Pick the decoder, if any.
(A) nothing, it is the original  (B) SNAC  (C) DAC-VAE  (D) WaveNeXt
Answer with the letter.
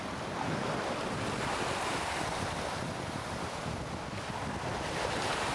A